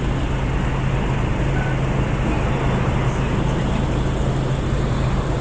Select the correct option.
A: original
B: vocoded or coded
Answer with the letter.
A